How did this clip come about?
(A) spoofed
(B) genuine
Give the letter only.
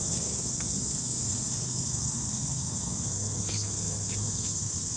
A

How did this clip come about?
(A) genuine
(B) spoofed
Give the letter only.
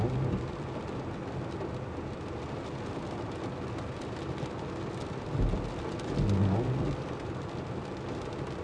A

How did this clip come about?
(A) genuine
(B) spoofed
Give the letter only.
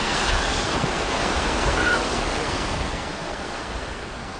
B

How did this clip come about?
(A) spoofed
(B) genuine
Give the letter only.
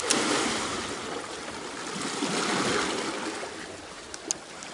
B